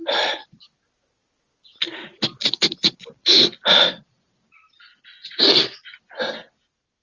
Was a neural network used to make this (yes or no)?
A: no